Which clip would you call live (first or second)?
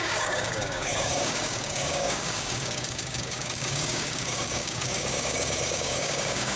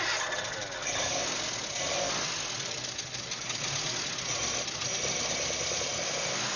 second